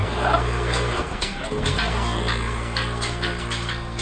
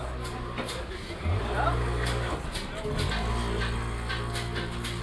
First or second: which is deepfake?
first